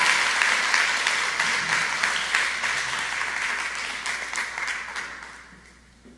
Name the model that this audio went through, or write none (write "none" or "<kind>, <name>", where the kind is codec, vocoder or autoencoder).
none